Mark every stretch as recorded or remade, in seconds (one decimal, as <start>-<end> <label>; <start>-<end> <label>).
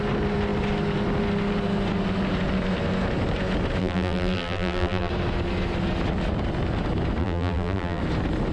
0.0-3.8 recorded; 3.8-5.1 remade; 5.1-7.2 recorded; 7.2-8.0 remade; 8.0-8.5 recorded